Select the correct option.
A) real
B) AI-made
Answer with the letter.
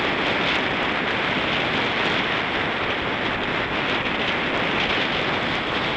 A